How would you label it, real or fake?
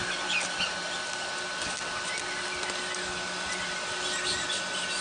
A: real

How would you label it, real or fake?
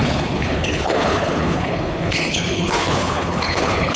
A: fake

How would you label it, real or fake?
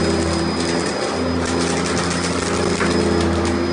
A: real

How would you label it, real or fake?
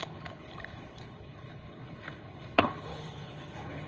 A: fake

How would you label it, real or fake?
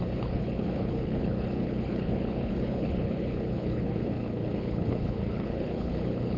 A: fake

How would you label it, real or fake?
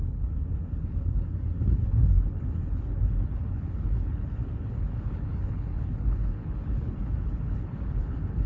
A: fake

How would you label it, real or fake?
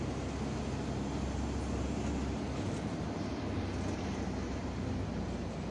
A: real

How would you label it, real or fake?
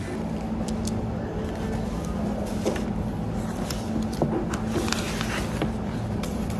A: real